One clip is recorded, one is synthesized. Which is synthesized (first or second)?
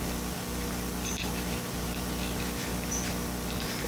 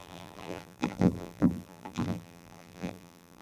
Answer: second